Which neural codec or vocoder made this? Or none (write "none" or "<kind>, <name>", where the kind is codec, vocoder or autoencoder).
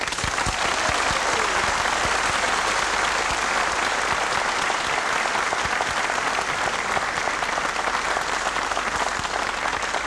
none